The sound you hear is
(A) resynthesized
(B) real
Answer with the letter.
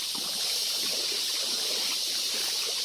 A